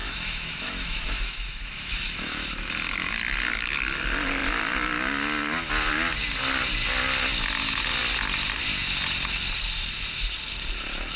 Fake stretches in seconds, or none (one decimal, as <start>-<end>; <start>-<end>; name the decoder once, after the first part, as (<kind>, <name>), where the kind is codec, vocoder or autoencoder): 0.0-2.7 (autoencoder, DAC-VAE)